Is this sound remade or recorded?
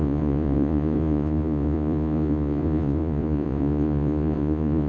remade